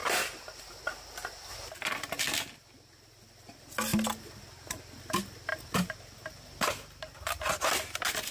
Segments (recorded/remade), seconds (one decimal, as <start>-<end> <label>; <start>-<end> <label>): 0.0-8.3 recorded